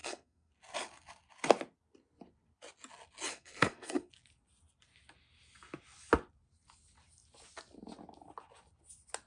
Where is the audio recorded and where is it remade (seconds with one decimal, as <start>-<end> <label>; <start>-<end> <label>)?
0.0-0.5 remade; 0.5-3.3 recorded; 3.3-4.1 remade; 4.1-9.3 recorded